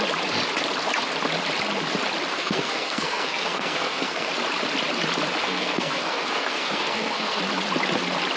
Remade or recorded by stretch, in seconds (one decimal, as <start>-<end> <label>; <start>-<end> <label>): 0.0-2.3 recorded; 2.3-4.3 remade; 4.3-5.4 recorded; 5.4-7.4 remade; 7.4-8.4 recorded